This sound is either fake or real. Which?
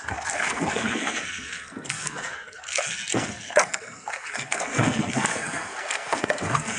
fake